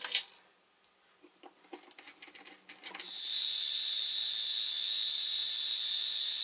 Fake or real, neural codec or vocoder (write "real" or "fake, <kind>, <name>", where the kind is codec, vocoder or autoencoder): real